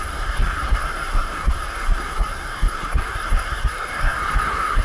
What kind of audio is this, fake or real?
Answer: fake